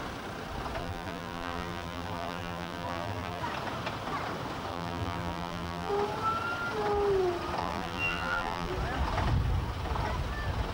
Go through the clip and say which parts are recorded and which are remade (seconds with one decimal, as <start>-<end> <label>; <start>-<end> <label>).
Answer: 0.0-0.8 recorded; 0.8-3.4 remade; 3.4-4.7 recorded; 4.7-5.9 remade; 5.9-7.6 recorded; 7.6-8.7 remade; 8.7-10.7 recorded